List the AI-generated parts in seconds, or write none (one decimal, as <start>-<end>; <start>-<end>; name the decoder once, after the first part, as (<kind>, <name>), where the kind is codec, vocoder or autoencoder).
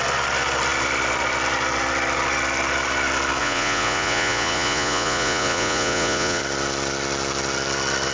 3.4-6.4 (vocoder, Vocos)